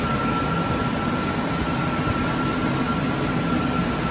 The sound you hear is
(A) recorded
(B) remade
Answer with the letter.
A